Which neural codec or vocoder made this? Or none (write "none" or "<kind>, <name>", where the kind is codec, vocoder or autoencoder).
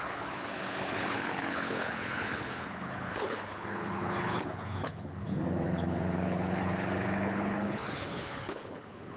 codec, HILCodec